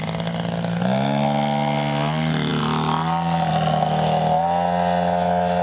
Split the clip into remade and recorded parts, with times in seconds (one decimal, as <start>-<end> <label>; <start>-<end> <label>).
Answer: 0.0-5.6 recorded